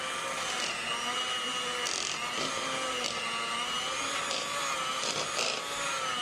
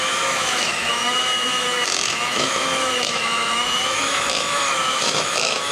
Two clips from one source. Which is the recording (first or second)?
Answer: first